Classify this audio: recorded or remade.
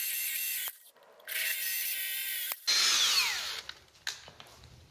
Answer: recorded